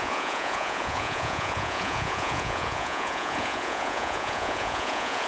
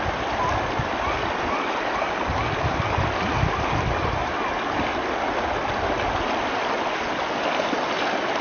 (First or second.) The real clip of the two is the second